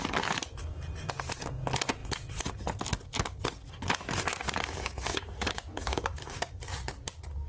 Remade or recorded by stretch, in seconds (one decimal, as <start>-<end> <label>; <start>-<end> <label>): 0.0-4.3 recorded; 4.3-6.5 remade; 6.5-7.5 recorded